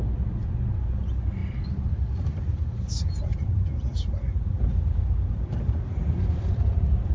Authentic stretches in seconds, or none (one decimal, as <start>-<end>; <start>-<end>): 0.0-3.3